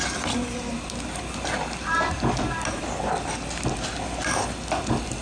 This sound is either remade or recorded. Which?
recorded